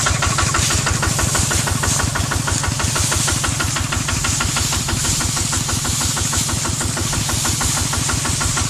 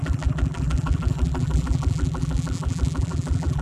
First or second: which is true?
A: first